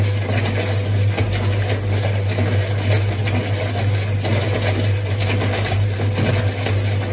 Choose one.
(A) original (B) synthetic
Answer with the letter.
A